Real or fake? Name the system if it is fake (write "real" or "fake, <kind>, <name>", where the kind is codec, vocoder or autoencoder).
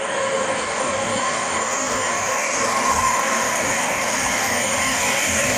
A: fake, codec, DAC